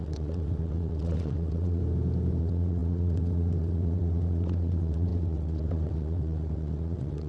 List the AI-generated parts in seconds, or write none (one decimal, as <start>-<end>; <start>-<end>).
0.0-1.8; 2.4-7.3